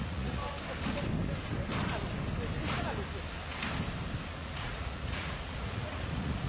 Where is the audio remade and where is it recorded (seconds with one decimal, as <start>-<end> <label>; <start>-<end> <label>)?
0.0-0.4 remade; 0.4-4.3 recorded; 4.3-6.5 remade